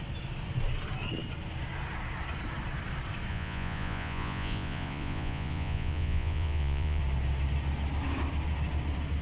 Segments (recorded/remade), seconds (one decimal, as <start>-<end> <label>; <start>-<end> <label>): 0.0-3.3 recorded; 3.3-7.0 remade; 7.0-9.2 recorded